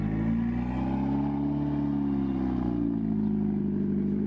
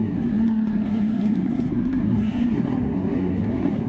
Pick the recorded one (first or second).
first